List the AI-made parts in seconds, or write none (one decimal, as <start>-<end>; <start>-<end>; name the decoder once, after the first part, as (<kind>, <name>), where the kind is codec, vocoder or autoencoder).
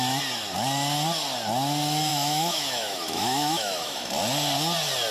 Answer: 2.1-4.1 (autoencoder, DAC-VAE)